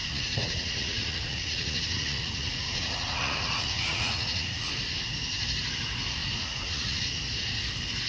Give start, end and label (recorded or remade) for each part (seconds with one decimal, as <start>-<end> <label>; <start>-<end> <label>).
0.0-4.7 remade; 4.7-6.2 recorded; 6.2-7.0 remade; 7.0-8.1 recorded